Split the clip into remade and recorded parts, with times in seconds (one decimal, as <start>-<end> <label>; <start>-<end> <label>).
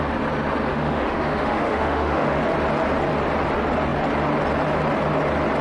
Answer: 0.0-0.7 recorded; 0.7-2.4 remade; 2.4-5.6 recorded